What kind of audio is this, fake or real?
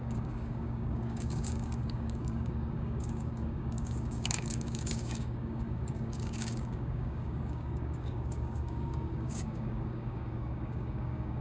fake